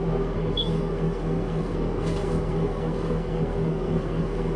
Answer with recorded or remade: remade